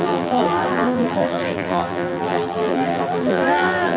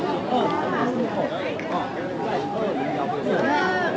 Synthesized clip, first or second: first